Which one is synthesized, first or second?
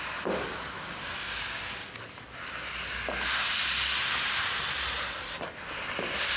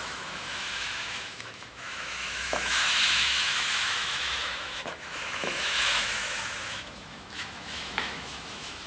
second